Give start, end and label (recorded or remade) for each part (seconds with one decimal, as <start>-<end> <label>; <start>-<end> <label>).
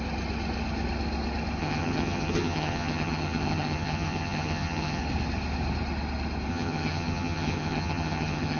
0.0-1.6 recorded; 1.6-5.0 remade; 5.0-6.5 recorded; 6.5-8.6 remade